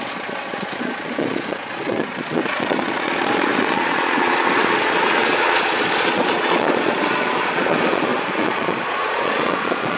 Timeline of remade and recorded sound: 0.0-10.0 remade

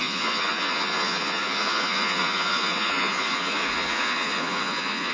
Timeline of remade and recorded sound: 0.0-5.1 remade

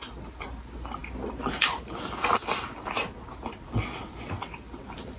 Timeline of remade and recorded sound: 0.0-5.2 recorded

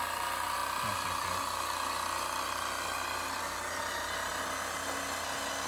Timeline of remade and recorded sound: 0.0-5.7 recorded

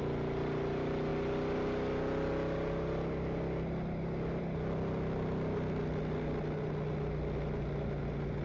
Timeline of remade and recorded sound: 0.0-8.4 recorded

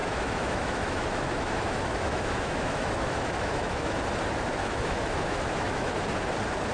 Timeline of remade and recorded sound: 0.0-4.0 remade; 4.0-4.6 recorded; 4.6-5.9 remade; 5.9-6.7 recorded